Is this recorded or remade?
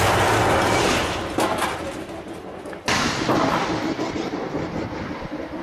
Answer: recorded